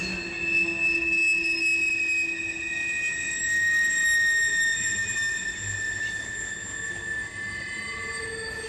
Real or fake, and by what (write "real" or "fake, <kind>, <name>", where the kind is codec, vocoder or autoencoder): real